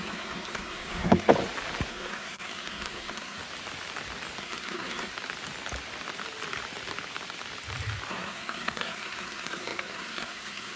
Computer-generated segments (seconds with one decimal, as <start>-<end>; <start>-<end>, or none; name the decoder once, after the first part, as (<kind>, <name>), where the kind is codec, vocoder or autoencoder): 0.0-1.3 (codec, SNAC); 1.9-3.4; 4.4-5.1; 8.1-10.8